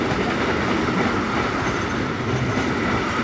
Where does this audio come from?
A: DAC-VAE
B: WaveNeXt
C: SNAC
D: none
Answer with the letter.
D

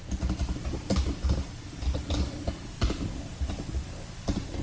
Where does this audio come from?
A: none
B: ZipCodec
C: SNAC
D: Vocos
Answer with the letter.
A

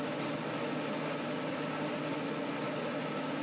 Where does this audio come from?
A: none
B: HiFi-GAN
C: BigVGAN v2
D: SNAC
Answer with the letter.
A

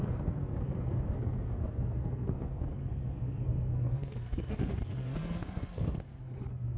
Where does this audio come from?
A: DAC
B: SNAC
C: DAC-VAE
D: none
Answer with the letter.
B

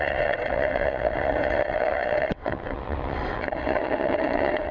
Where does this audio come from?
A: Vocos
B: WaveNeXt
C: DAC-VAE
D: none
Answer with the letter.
B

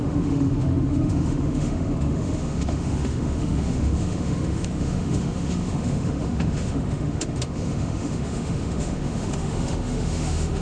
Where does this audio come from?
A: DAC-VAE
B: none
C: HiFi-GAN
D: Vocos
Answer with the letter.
A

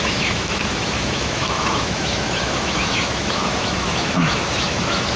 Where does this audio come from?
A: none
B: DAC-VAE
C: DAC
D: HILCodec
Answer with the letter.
B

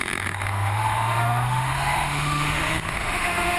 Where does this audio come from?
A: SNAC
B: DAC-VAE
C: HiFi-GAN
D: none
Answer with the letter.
B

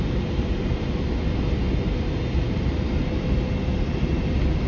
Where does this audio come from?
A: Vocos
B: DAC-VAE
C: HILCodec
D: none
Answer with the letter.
D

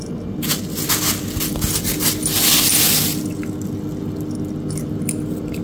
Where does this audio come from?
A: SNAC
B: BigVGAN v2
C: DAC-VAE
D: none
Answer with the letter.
D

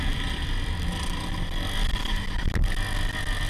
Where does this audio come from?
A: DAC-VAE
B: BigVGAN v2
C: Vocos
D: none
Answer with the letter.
D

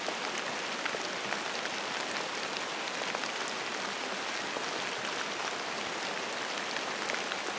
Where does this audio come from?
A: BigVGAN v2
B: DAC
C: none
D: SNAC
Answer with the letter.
C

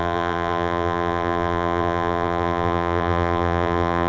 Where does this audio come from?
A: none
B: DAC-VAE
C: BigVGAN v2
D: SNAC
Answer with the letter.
C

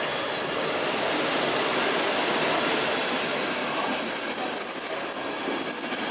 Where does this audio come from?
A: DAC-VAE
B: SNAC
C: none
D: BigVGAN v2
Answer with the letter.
C